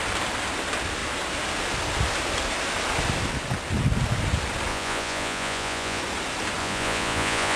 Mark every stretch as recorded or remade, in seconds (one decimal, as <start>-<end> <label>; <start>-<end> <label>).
0.0-4.7 recorded; 4.7-6.0 remade; 6.0-6.6 recorded; 6.6-7.6 remade